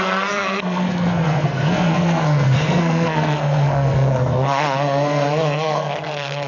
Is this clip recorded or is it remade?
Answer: remade